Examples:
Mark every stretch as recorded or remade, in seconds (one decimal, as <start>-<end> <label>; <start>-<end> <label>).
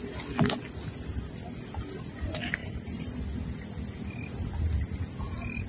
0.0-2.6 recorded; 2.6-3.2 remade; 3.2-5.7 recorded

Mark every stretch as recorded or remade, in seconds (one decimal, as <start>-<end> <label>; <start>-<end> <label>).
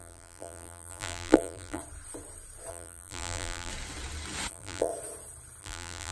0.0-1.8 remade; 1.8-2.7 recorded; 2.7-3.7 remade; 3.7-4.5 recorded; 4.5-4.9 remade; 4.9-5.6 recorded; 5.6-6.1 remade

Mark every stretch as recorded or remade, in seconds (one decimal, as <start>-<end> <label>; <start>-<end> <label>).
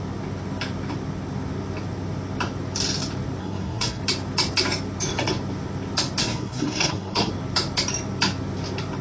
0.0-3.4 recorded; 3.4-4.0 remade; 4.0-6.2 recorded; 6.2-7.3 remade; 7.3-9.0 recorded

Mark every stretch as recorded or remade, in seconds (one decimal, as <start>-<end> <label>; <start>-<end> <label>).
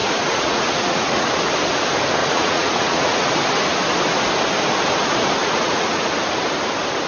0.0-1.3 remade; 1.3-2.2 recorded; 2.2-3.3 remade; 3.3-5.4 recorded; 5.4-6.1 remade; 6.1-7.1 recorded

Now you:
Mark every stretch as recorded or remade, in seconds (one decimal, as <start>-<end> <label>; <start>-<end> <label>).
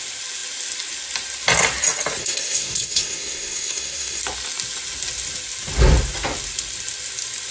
0.0-2.2 recorded; 2.2-4.2 remade; 4.2-7.5 recorded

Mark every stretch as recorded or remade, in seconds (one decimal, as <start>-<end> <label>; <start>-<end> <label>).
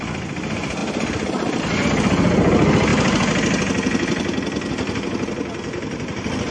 0.0-6.5 recorded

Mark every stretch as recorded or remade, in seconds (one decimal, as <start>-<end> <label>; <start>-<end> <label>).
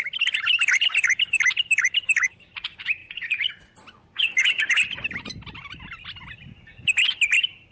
0.0-3.0 recorded; 3.0-3.5 remade; 3.5-7.7 recorded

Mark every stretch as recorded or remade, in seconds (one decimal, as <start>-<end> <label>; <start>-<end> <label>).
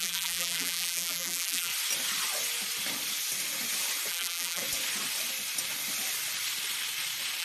0.0-1.7 remade; 1.7-4.1 recorded; 4.1-4.6 remade; 4.6-7.4 recorded